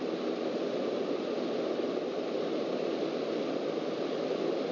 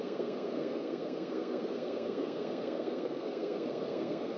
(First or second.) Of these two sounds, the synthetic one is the second